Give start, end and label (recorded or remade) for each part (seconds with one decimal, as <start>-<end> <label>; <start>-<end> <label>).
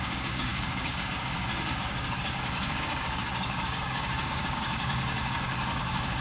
0.0-6.2 remade